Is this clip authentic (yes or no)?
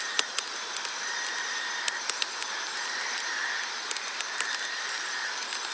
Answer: yes